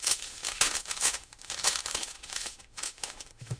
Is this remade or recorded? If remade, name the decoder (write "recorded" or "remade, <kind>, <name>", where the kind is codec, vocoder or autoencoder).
remade, autoencoder, DAC-VAE